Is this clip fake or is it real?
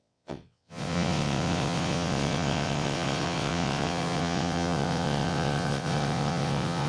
fake